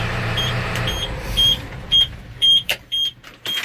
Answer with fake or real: fake